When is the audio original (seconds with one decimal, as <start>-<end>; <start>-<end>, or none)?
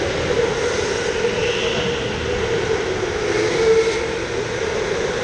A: 0.0-5.2